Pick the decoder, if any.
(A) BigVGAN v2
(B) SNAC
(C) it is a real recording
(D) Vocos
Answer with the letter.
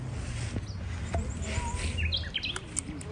C